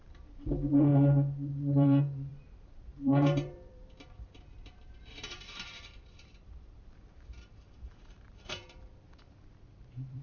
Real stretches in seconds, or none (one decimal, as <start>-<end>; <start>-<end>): 0.9-1.5